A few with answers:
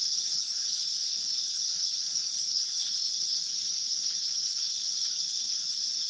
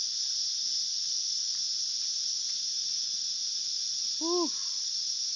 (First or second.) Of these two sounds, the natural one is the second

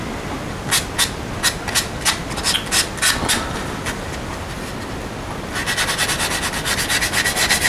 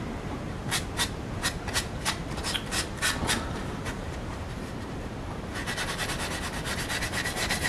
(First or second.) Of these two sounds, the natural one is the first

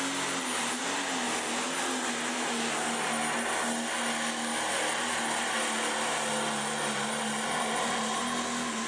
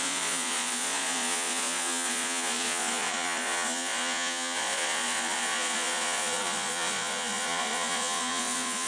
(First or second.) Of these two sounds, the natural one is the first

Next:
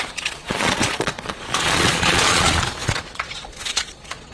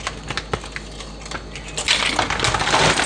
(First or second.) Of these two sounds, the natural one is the second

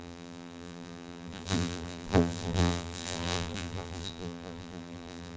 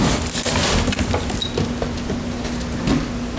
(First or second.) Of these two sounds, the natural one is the second